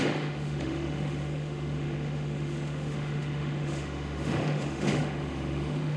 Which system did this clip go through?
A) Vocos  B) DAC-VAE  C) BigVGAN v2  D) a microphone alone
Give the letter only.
B